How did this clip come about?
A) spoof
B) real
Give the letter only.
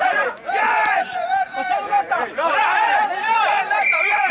A